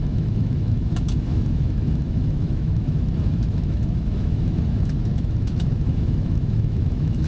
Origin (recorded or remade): remade